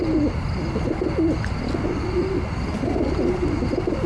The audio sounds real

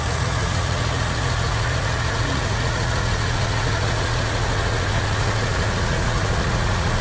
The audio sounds fake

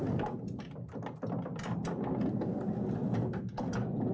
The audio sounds real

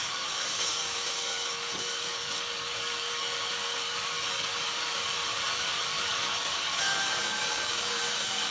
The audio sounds fake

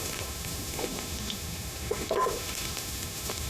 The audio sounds fake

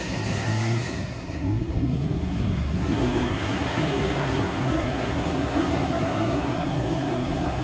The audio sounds fake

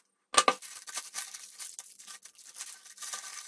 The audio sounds real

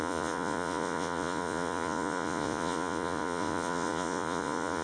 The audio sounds fake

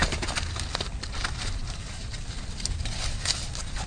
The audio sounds real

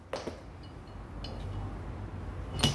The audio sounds real